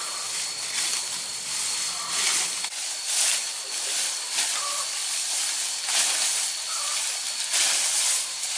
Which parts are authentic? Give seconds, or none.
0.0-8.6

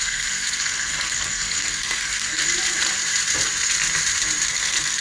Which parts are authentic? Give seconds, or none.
2.4-4.5